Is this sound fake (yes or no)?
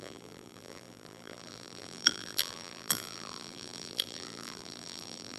yes